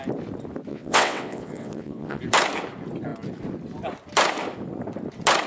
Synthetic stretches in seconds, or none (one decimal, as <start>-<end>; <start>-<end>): 0.7-2.2